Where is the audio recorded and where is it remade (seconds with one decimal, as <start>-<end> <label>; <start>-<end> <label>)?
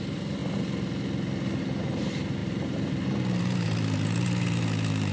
0.0-0.4 remade; 0.4-1.6 recorded; 1.6-5.1 remade